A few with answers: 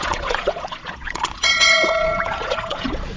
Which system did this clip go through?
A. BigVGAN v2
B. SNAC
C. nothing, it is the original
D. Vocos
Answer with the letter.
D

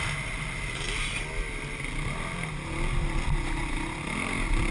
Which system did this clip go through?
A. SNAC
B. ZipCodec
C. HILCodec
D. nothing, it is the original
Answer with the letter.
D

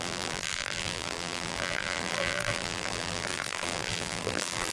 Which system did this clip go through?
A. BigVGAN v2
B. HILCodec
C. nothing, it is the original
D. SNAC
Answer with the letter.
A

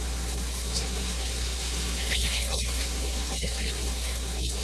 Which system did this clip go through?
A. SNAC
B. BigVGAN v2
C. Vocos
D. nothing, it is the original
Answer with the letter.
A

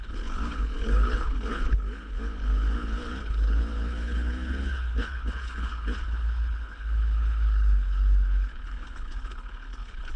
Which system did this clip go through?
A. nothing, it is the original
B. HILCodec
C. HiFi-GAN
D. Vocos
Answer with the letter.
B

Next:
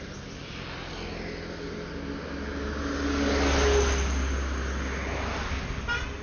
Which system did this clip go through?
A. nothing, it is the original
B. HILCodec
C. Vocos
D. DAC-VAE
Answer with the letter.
A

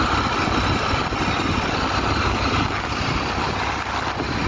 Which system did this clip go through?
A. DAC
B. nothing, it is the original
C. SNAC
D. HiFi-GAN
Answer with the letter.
B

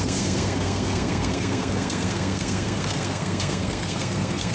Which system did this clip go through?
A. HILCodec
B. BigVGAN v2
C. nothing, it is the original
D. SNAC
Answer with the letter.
D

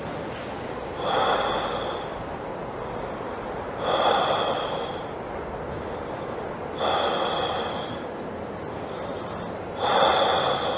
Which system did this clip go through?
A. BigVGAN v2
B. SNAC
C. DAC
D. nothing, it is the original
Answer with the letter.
D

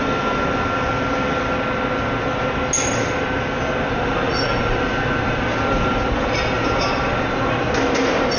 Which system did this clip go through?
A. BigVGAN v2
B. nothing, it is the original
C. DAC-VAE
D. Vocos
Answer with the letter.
B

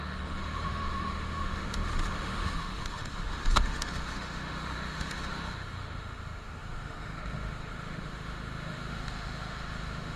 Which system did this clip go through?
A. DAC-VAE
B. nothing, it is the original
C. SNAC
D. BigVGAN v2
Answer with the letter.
A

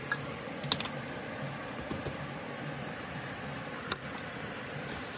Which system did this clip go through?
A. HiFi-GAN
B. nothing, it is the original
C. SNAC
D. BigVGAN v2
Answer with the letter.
D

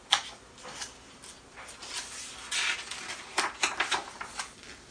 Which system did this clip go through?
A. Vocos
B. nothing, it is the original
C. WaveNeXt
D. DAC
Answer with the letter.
B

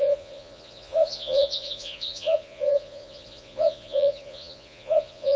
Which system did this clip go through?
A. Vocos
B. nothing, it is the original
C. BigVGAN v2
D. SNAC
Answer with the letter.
A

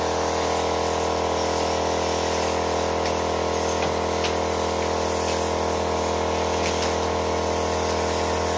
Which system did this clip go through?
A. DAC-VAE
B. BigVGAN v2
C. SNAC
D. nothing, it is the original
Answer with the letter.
D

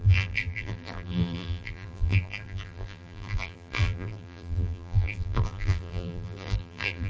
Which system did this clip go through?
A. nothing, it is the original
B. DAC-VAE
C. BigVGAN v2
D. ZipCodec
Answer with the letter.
C